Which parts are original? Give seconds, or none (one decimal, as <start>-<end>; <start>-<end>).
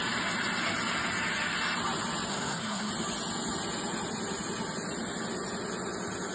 0.0-2.3; 2.9-6.3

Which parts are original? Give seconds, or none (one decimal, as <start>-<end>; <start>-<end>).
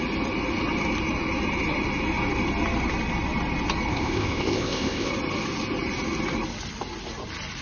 0.0-3.9; 5.1-7.6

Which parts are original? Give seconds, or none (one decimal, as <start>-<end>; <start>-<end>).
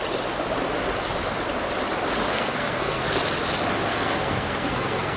0.0-2.3; 3.2-3.9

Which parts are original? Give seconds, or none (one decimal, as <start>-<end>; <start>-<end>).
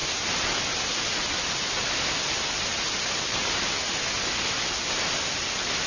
0.0-5.9